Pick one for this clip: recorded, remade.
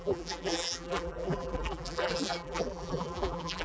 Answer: remade